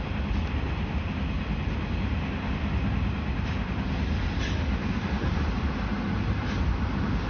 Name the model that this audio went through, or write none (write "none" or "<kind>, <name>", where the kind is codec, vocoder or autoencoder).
none